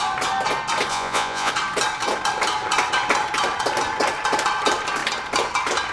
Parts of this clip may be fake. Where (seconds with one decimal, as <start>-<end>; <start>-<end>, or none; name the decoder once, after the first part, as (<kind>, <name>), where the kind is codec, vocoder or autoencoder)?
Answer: 0.9-1.5 (vocoder, Vocos)